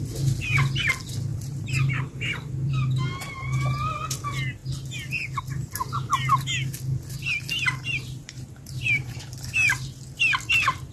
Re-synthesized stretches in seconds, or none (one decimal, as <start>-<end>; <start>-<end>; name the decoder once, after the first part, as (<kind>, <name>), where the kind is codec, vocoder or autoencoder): 1.3-2.7 (vocoder, BigVGAN v2); 8.2-9.2